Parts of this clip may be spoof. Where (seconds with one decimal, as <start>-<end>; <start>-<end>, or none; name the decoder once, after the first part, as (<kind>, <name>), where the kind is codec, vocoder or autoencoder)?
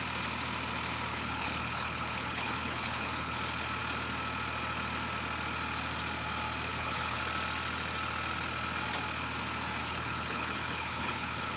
1.1-3.4 (codec, HILCodec); 6.7-7.2; 9.8-11.6